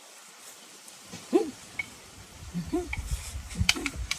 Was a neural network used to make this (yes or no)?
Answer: yes